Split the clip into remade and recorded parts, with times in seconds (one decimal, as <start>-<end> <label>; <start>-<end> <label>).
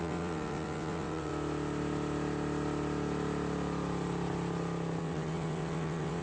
0.0-1.3 remade; 1.3-5.0 recorded; 5.0-6.2 remade